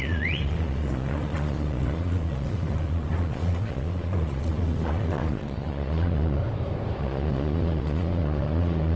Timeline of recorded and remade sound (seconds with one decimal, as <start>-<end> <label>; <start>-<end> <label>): 0.0-6.4 remade; 6.4-7.0 recorded; 7.0-9.0 remade